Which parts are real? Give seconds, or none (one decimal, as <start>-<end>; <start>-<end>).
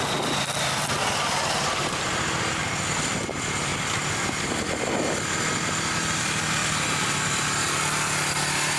0.0-8.8